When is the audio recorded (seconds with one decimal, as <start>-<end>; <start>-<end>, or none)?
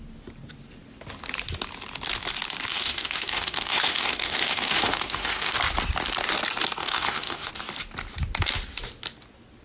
0.0-2.7; 5.5-6.8; 7.5-9.6